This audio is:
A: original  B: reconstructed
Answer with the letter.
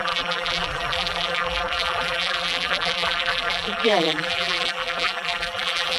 B